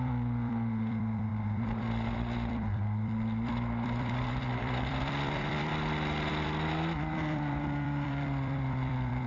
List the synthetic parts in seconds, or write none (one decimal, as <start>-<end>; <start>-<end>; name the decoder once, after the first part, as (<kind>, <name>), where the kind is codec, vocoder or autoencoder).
0.0-5.7 (vocoder, BigVGAN v2); 6.3-9.3